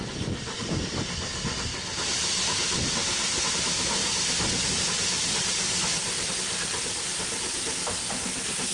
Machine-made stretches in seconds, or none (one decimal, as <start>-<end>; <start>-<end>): none